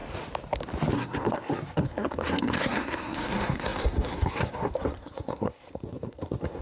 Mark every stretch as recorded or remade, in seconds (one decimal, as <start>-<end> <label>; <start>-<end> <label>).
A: 0.0-0.9 recorded; 0.9-6.6 remade